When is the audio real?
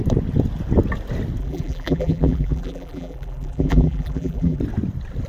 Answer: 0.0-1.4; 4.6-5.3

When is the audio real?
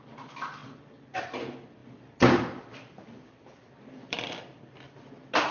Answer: 0.0-1.8; 5.1-5.5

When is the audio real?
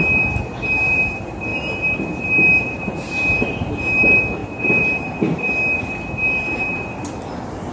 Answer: 1.5-2.0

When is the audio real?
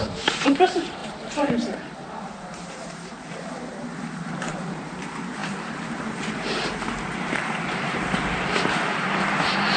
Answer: none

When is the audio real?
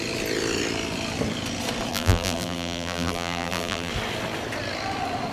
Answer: 0.0-1.9; 3.9-5.3